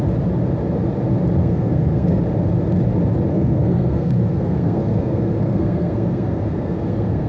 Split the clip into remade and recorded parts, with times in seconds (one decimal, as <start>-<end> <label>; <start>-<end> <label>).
0.0-1.4 recorded; 1.4-2.2 remade; 2.2-3.3 recorded; 3.3-7.3 remade